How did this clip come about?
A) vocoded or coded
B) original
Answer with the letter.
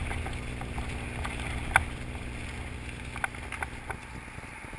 B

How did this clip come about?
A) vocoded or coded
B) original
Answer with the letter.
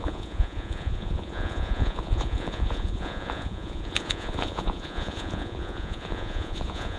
A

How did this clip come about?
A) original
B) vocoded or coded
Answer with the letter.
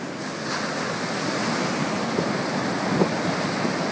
A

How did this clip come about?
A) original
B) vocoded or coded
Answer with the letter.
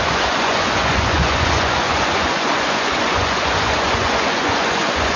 B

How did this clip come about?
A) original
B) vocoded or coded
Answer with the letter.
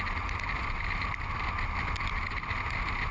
A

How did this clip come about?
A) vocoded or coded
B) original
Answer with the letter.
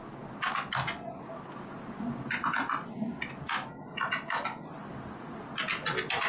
B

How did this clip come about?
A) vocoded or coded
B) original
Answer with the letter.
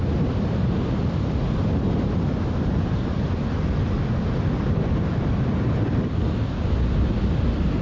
B